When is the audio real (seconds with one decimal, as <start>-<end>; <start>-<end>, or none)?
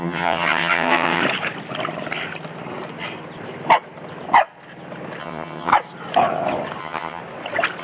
1.2-5.2; 5.7-6.8; 7.2-7.8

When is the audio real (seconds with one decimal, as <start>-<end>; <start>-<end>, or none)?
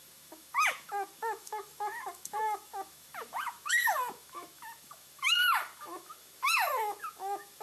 none